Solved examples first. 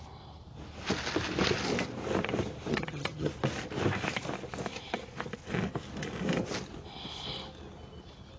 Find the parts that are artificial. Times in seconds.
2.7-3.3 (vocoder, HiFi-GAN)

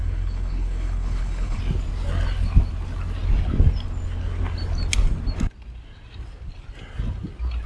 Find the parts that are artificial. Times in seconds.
0.0-1.6 (codec, HILCodec)